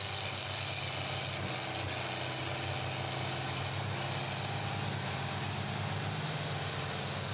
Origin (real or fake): real